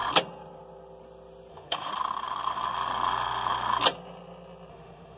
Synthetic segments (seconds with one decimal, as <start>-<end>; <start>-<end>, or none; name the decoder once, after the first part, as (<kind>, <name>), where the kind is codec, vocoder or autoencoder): 1.5-1.9 (autoencoder, DAC-VAE); 4.7-5.2